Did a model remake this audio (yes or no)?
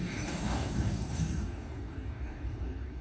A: yes